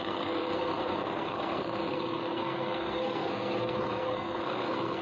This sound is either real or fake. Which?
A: fake